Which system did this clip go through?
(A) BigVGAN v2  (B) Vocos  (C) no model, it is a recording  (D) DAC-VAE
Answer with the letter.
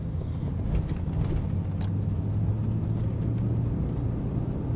C